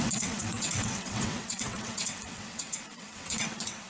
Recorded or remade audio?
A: remade